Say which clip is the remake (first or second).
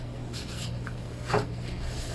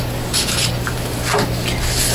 first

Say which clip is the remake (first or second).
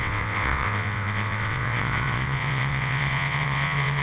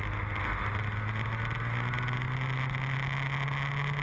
first